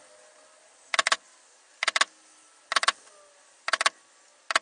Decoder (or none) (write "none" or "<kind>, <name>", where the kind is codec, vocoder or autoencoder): none